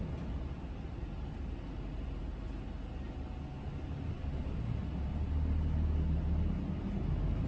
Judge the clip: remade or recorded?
recorded